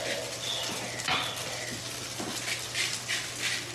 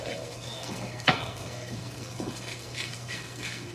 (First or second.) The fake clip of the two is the second